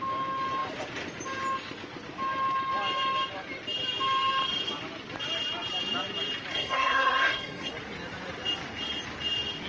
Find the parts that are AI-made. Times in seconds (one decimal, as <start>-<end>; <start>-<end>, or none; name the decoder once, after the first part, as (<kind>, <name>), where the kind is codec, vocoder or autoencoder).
6.5-7.7 (codec, SNAC)